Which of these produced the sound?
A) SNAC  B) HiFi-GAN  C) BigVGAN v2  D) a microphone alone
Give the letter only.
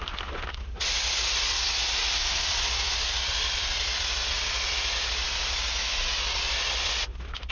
D